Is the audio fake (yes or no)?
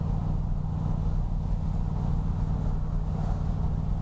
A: no